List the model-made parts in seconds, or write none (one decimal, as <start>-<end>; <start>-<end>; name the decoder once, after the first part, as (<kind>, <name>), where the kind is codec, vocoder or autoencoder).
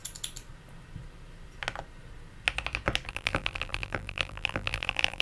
3.1-5.2 (vocoder, BigVGAN v2)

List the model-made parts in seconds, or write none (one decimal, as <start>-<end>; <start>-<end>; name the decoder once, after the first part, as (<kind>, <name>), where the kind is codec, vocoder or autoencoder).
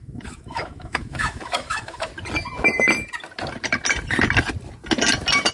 0.0-2.1 (autoencoder, DAC-VAE)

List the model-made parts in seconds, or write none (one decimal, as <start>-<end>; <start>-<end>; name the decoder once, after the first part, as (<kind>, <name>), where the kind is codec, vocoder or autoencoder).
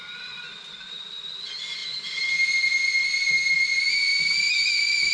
none